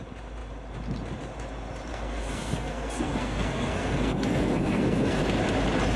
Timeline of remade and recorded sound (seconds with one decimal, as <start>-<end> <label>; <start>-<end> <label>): 0.0-1.9 recorded; 1.9-5.2 remade; 5.2-6.0 recorded